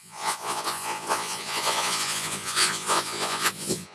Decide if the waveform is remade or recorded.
remade